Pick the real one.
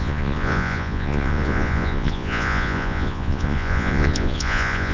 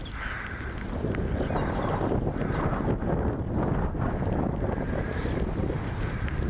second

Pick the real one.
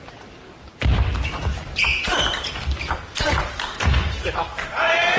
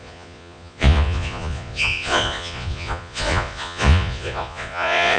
first